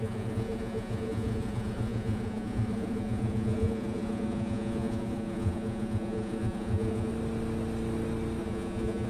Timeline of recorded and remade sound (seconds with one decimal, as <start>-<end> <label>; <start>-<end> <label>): 0.0-7.1 remade; 7.1-8.4 recorded; 8.4-9.1 remade